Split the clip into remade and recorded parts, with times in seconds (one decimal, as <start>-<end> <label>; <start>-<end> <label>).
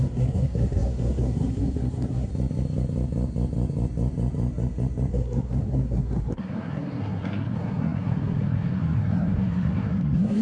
0.0-2.3 remade; 2.3-5.1 recorded; 5.1-10.4 remade